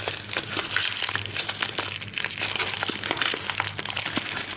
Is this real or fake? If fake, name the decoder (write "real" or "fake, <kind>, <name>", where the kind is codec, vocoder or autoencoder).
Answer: real